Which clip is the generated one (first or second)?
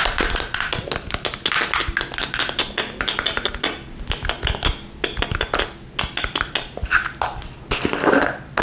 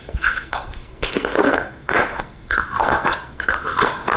second